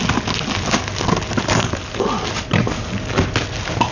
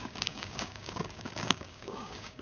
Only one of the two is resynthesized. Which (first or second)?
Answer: second